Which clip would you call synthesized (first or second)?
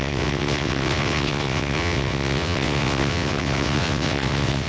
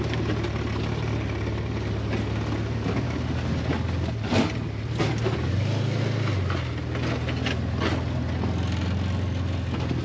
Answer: first